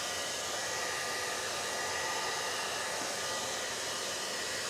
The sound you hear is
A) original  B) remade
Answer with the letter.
A